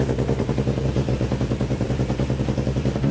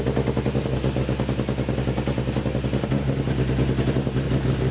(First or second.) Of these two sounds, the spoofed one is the first